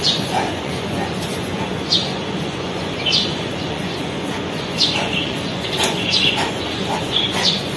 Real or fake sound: fake